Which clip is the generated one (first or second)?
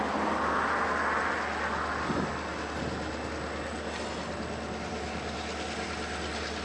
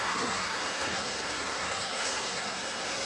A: second